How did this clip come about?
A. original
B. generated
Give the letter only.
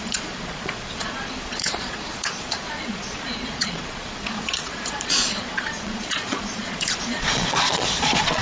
B